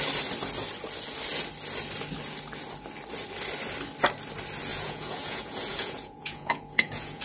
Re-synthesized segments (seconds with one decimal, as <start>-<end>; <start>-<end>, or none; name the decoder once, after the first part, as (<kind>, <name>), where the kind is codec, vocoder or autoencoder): 4.7-7.2 (vocoder, Vocos)